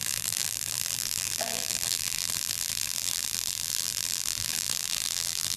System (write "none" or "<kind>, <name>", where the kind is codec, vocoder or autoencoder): vocoder, BigVGAN v2